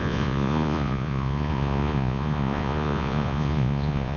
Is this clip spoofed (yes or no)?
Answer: yes